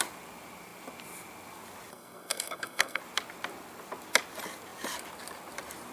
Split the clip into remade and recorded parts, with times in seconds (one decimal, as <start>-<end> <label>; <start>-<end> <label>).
0.0-1.9 recorded; 1.9-3.0 remade; 3.0-5.9 recorded